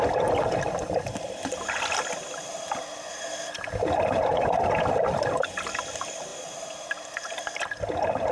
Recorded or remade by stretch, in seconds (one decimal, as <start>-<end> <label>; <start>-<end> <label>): 0.0-3.1 remade; 3.1-3.9 recorded; 3.9-6.3 remade; 6.3-7.9 recorded; 7.9-8.3 remade